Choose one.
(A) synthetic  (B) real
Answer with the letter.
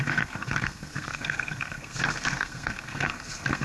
A